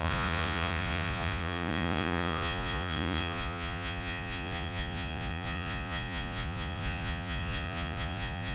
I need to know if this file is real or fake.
fake